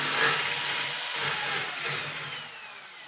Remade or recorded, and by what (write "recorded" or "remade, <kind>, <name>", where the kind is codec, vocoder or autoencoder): recorded